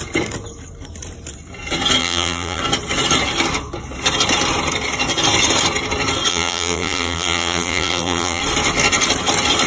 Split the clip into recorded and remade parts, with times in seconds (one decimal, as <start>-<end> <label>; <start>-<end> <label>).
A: 0.0-2.0 recorded; 2.0-2.6 remade; 2.6-6.3 recorded; 6.3-8.4 remade; 8.4-9.7 recorded